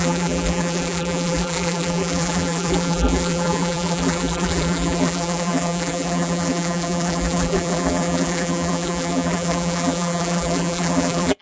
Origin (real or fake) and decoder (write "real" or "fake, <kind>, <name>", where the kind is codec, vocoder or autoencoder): fake, vocoder, BigVGAN v2